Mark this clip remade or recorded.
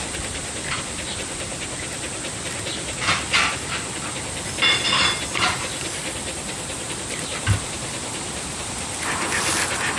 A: remade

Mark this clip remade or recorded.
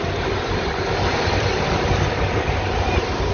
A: remade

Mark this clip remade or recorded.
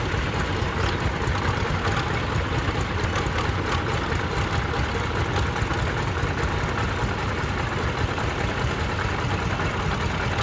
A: recorded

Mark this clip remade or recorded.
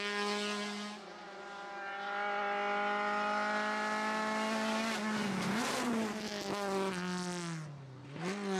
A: recorded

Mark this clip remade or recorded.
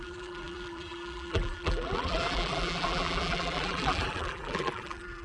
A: remade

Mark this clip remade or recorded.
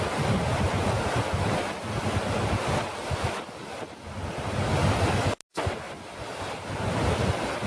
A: recorded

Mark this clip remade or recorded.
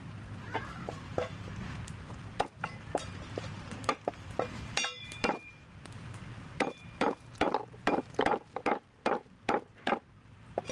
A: remade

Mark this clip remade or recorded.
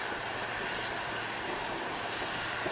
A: recorded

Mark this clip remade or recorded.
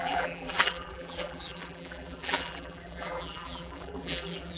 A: remade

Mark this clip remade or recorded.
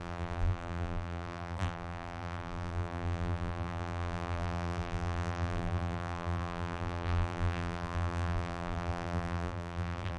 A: remade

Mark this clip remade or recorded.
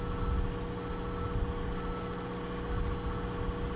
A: recorded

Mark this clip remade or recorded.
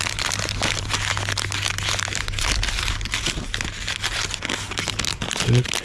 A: recorded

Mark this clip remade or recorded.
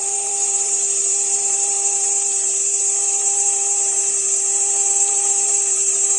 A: remade